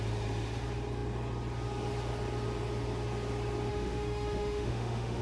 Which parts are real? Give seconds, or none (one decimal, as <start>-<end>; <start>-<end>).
0.0-3.7